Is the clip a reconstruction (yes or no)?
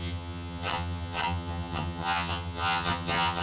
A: yes